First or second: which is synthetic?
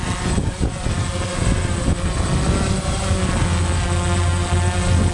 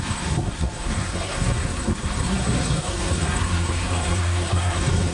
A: second